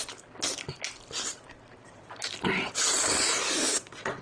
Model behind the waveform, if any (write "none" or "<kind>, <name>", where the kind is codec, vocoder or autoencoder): none